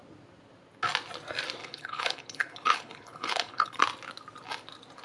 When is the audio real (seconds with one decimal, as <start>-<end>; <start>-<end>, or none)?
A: 0.0-1.6; 3.8-5.0